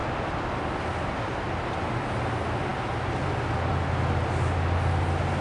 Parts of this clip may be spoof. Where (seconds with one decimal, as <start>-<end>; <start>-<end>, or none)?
none